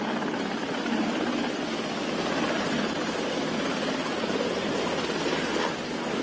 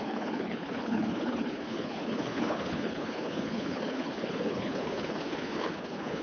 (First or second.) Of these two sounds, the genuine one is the first